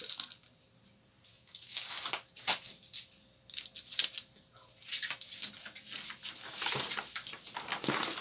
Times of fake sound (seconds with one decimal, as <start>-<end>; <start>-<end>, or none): 1.3-1.8